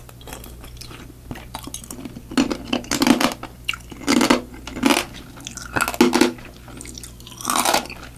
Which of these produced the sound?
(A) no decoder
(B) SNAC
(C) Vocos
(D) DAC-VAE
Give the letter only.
A